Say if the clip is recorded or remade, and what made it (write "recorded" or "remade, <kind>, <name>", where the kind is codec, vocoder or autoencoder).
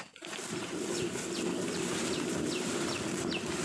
recorded